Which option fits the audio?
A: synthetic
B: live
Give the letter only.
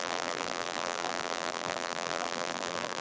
A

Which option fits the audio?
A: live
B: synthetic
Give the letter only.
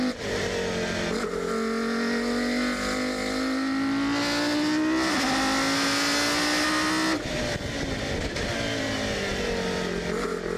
A